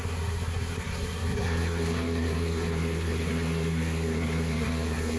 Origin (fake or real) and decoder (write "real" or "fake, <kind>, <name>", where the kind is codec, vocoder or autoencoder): fake, codec, SNAC